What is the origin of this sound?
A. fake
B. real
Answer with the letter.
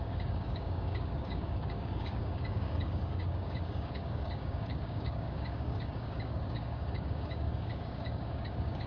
A